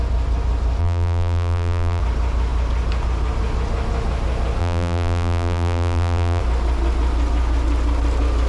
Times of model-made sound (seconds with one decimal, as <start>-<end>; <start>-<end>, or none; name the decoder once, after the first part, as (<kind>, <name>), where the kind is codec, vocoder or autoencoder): 0.8-2.0 (vocoder, BigVGAN v2); 4.6-6.4